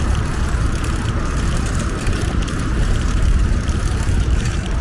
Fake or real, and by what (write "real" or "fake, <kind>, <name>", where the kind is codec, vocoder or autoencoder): fake, vocoder, BigVGAN v2